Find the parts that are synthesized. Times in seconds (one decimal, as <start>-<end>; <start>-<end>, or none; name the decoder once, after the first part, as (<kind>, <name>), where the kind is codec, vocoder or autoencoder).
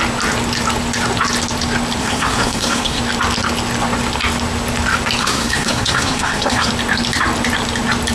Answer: 2.0-3.0 (codec, SNAC); 5.2-6.7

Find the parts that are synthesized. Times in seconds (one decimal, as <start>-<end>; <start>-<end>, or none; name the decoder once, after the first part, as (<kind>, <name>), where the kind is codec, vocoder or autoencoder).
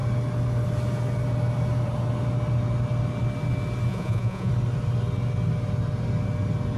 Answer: 3.9-4.5 (vocoder, Vocos)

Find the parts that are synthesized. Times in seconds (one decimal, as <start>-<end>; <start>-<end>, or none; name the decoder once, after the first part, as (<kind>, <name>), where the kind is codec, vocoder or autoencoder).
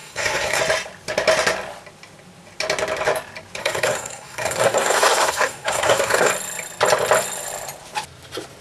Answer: 0.0-0.6 (codec, SNAC); 3.6-6.3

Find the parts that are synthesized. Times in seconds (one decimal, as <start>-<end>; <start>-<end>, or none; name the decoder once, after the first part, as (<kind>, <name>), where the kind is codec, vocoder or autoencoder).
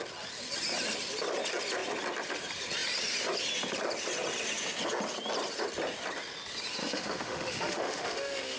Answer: 6.8-8.6 (autoencoder, DAC-VAE)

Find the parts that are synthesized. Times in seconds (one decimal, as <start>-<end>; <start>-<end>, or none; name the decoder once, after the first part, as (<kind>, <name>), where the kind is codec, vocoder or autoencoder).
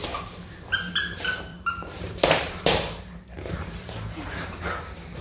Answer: 1.5-4.6 (vocoder, BigVGAN v2)